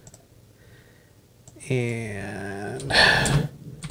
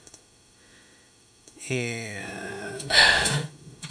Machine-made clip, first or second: second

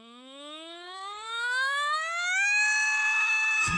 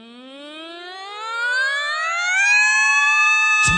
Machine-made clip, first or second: first